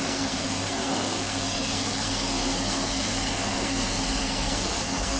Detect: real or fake fake